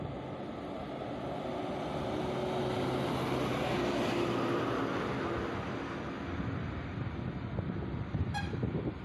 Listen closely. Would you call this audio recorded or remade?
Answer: recorded